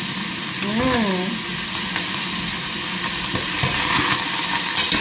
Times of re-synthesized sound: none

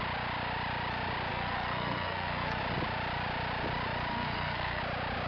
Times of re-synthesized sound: 1.3-2.6; 4.1-4.8

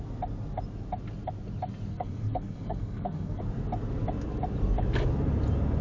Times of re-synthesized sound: 1.9-3.4

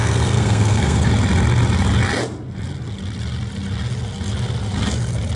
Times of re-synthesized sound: 0.0-1.1

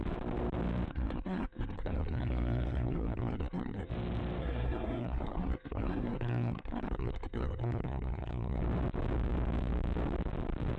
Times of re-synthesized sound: 0.9-3.9; 4.4-8.6

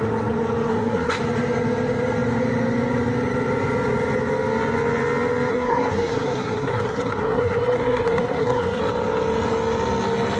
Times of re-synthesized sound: 0.7-1.2; 5.5-8.8

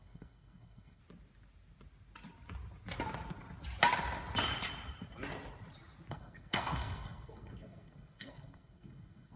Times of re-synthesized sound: 0.0-1.0; 6.1-9.4

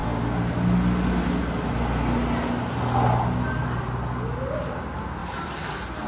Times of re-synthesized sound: none